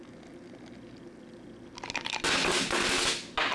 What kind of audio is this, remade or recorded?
recorded